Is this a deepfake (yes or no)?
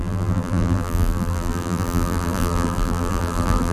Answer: yes